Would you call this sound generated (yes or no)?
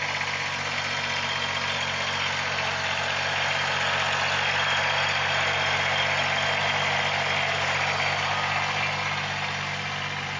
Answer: no